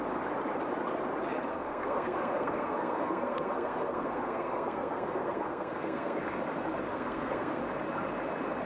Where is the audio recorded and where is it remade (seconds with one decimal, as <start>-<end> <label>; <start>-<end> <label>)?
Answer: 0.0-1.5 recorded; 1.5-6.2 remade; 6.2-6.9 recorded; 6.9-7.6 remade; 7.6-8.7 recorded